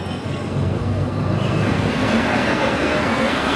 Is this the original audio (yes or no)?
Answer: no